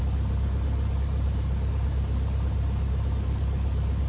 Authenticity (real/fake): real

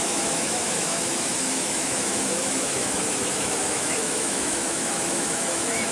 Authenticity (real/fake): fake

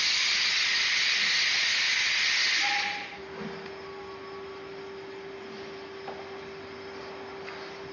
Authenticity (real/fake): real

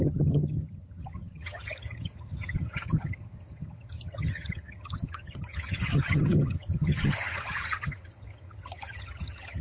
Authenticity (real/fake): fake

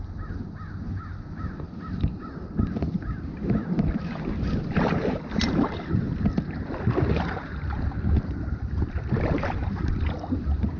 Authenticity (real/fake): real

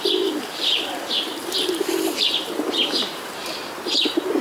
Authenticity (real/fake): fake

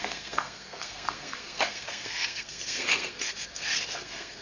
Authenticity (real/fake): fake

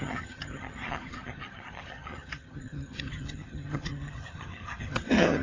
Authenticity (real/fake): fake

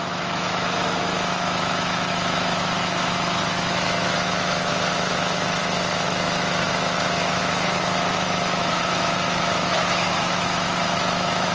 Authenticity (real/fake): fake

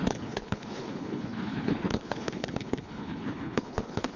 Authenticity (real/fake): fake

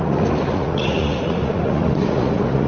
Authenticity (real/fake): fake